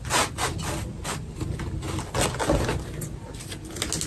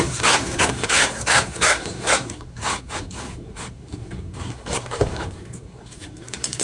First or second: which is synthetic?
second